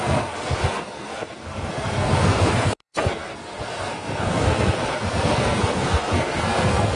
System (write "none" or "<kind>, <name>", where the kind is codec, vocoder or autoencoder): codec, SNAC